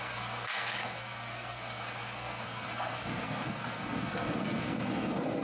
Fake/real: fake